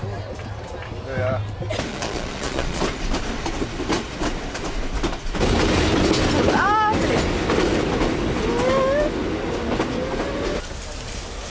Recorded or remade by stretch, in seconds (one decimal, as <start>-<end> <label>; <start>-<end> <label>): 0.0-1.9 recorded; 1.9-2.8 remade; 2.8-11.5 recorded

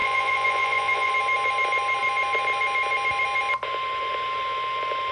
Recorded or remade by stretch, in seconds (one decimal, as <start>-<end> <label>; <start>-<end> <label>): 0.0-1.1 remade; 1.1-5.1 recorded

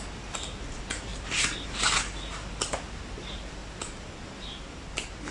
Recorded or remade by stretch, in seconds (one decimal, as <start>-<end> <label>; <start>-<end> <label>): 0.0-5.3 recorded

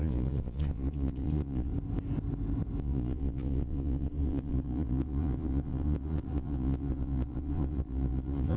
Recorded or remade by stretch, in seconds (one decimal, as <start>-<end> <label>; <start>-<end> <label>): 0.0-1.7 remade; 1.7-2.8 recorded; 2.8-8.6 remade

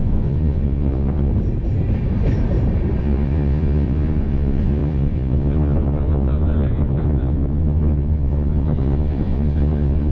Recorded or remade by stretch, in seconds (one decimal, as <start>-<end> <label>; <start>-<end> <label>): 0.0-1.3 remade; 1.3-3.0 recorded; 3.0-10.1 remade

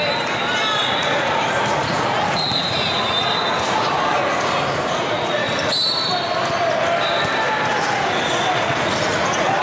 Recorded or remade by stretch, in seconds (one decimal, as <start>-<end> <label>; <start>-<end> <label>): 0.0-0.8 recorded; 0.8-5.5 remade; 5.5-7.7 recorded; 7.7-9.6 remade